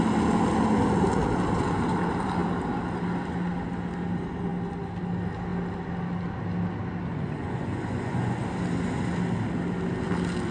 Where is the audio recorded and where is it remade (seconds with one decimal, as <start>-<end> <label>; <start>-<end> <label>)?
0.0-7.1 recorded; 7.1-8.4 remade; 8.4-10.5 recorded